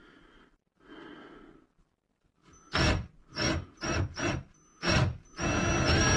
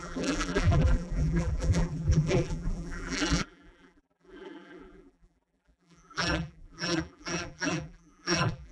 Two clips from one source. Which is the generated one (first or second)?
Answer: second